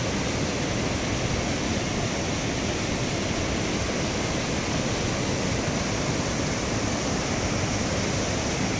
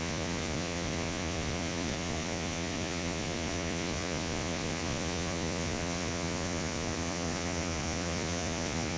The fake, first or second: second